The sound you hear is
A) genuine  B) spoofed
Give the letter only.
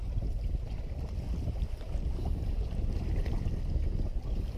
A